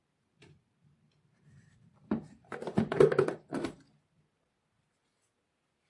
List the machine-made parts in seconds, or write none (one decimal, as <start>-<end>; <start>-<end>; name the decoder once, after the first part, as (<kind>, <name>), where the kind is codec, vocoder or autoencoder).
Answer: 0.0-3.5 (vocoder, BigVGAN v2)